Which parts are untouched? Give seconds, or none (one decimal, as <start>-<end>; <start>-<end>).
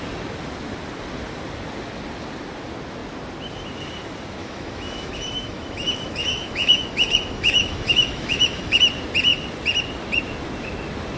0.0-4.4; 8.8-11.2